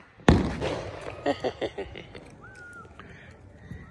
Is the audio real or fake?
real